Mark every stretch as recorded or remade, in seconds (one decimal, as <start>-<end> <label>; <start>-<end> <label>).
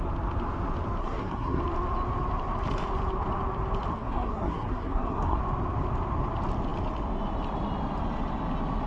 0.0-1.0 recorded; 1.0-1.6 remade; 1.6-3.9 recorded; 3.9-5.4 remade; 5.4-8.9 recorded